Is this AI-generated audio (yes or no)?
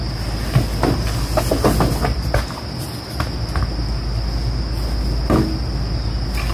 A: no